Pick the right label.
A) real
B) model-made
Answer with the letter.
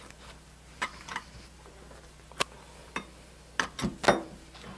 A